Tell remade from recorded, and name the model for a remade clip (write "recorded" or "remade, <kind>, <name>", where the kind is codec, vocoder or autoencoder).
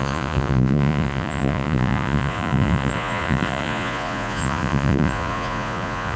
remade, vocoder, Vocos